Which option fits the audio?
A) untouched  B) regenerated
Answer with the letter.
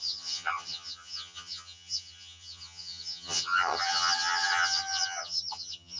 B